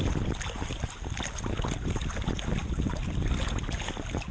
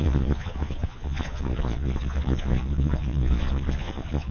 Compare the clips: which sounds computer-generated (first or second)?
second